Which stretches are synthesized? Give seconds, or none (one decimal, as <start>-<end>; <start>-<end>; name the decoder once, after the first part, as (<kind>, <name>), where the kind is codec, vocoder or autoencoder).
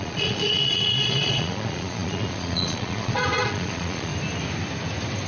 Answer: 0.0-4.1 (vocoder, Vocos)